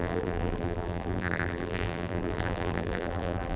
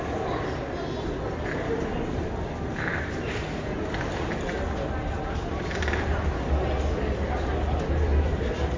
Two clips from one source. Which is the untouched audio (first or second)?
second